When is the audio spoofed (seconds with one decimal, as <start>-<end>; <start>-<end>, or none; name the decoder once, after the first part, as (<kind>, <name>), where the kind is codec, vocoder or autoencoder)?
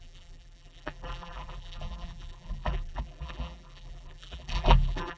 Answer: 0.0-5.2 (vocoder, BigVGAN v2)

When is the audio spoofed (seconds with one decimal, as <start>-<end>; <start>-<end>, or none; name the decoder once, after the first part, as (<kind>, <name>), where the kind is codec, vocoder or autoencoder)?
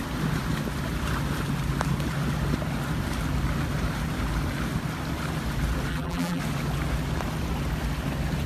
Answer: 5.9-6.4 (vocoder, BigVGAN v2)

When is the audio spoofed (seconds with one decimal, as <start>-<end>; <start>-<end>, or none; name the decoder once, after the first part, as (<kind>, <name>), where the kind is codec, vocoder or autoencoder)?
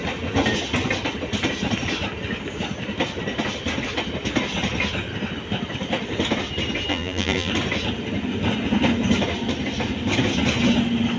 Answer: 6.9-7.5 (vocoder, BigVGAN v2)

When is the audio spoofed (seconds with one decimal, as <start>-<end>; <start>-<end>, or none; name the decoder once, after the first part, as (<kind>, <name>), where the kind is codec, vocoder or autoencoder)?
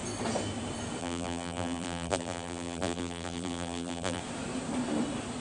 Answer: 1.0-4.2 (vocoder, BigVGAN v2)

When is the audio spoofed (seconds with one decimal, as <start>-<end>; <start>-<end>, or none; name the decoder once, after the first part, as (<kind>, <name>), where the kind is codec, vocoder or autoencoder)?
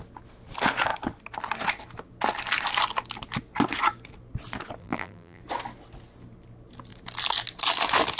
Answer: 4.8-5.4 (vocoder, BigVGAN v2)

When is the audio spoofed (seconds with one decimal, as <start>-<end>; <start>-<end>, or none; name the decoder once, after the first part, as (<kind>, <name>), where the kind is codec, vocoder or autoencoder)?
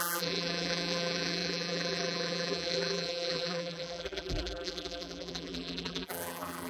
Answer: 0.0-6.7 (vocoder, BigVGAN v2)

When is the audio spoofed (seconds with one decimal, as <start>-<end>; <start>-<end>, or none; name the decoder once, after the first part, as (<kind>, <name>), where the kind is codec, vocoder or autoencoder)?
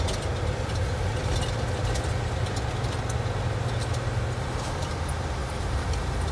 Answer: 5.4-6.3 (vocoder, BigVGAN v2)